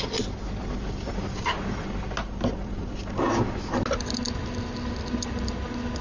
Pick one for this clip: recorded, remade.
recorded